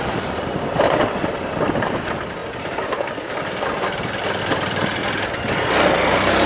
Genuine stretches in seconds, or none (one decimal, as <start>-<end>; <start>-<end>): 2.4-4.4; 5.0-5.9